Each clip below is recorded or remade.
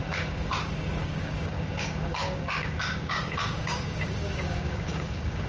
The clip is remade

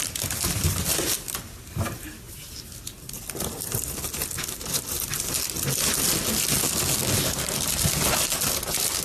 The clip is recorded